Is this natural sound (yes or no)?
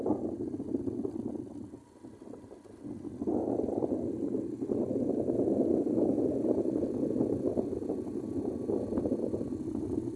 yes